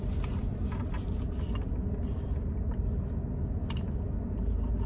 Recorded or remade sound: recorded